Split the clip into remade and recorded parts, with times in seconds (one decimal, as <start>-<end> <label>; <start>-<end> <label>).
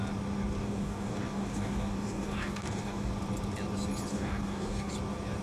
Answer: 0.0-0.6 recorded; 0.6-3.1 remade; 3.1-4.1 recorded; 4.1-4.9 remade; 4.9-5.4 recorded